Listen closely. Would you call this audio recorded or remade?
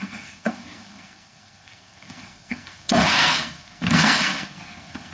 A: remade